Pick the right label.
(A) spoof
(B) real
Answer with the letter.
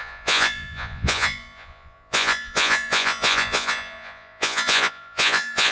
A